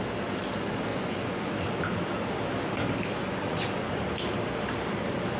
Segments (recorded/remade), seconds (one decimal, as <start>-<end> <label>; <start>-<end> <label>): 0.0-0.9 recorded; 0.9-1.5 remade; 1.5-3.2 recorded; 3.2-4.0 remade; 4.0-5.4 recorded